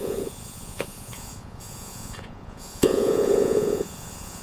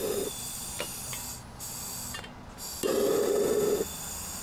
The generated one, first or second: first